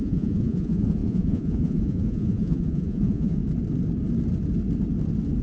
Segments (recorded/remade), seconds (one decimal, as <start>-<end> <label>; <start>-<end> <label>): 0.0-3.4 remade; 3.4-5.4 recorded

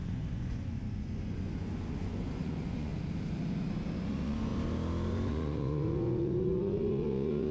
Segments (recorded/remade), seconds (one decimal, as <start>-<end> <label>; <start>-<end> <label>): 0.0-2.9 remade; 2.9-4.0 recorded; 4.0-4.5 remade; 4.5-5.3 recorded; 5.3-7.5 remade

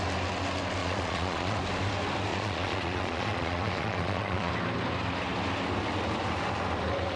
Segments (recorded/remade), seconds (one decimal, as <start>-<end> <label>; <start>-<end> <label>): 0.0-0.8 recorded; 0.8-1.6 remade; 1.6-2.3 recorded; 2.3-4.5 remade; 4.5-7.2 recorded

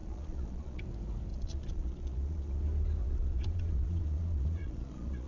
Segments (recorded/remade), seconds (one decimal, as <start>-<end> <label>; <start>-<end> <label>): 0.0-0.8 remade; 0.8-1.3 recorded; 1.3-2.6 remade; 2.6-3.0 recorded; 3.0-5.3 remade

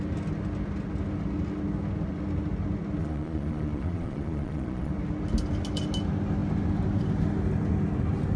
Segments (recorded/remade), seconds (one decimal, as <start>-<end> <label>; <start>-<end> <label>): 0.0-3.0 recorded; 3.0-4.9 remade; 4.9-8.4 recorded

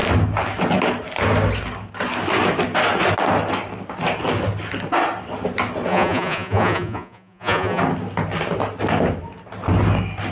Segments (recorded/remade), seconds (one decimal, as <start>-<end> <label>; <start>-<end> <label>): 0.0-5.9 recorded; 5.9-7.8 remade; 7.8-10.3 recorded

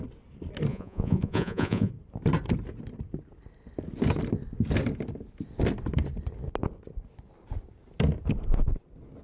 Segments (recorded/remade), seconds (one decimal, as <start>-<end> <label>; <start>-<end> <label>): 0.0-0.7 recorded; 0.7-1.9 remade; 1.9-9.2 recorded

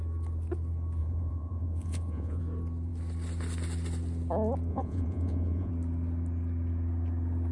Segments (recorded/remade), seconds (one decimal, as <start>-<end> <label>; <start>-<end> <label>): 0.0-1.0 recorded; 1.0-2.4 remade; 2.4-4.7 recorded; 4.7-5.7 remade; 5.7-7.5 recorded